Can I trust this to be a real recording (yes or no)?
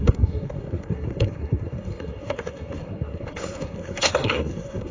no